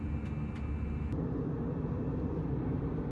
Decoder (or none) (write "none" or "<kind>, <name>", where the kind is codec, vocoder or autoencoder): none